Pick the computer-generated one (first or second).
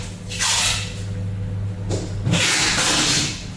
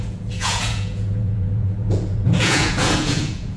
second